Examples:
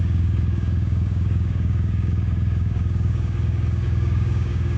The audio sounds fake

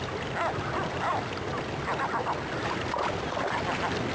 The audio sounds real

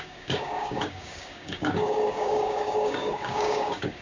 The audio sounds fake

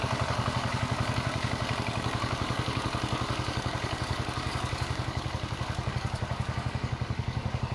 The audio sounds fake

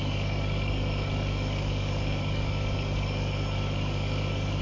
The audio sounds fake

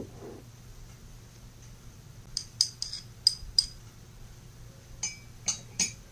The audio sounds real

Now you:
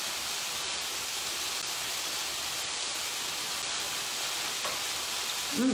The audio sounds real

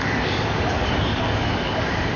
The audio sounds fake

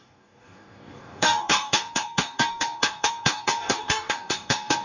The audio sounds fake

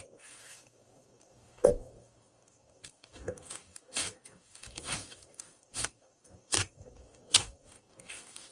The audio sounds fake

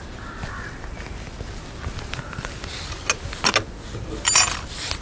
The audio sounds real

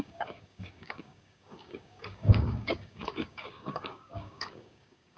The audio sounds fake